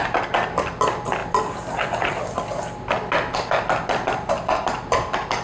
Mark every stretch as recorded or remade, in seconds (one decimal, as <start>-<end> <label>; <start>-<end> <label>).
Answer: 0.0-5.4 recorded

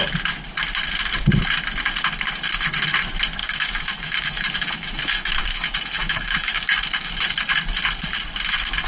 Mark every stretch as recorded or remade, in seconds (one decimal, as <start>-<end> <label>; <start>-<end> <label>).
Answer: 0.0-3.4 recorded; 3.4-7.2 remade; 7.2-8.9 recorded

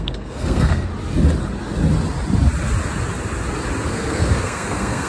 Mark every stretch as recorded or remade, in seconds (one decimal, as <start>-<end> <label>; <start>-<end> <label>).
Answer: 0.0-0.9 remade; 0.9-3.9 recorded; 3.9-5.1 remade

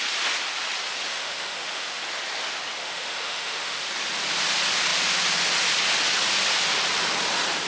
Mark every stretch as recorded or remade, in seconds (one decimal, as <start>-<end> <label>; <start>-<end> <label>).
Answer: 0.0-1.1 recorded; 1.1-2.0 remade; 2.0-2.8 recorded; 2.8-3.8 remade; 3.8-7.7 recorded

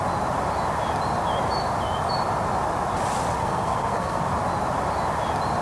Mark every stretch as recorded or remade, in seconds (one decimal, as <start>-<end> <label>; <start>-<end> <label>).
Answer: 0.0-3.4 recorded; 3.4-4.2 remade; 4.2-5.6 recorded